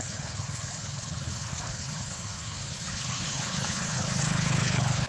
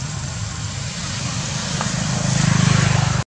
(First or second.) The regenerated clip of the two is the first